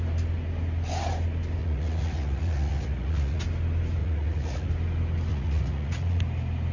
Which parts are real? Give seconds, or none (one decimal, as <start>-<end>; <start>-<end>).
0.0-1.6; 3.4-4.0; 4.7-5.3; 6.2-6.7